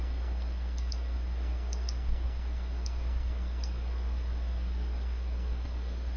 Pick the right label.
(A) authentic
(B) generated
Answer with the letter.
B